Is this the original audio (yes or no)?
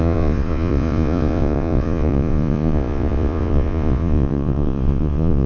no